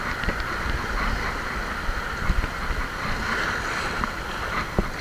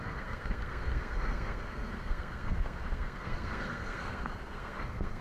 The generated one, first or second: second